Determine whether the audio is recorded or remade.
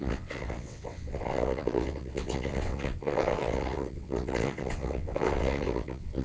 remade